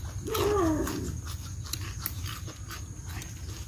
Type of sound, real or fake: real